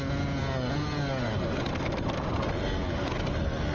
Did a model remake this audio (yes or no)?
no